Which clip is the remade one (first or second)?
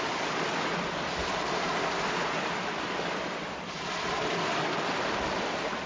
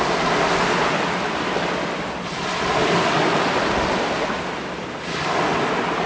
first